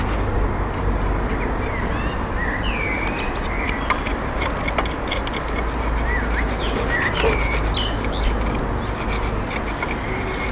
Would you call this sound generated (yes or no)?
no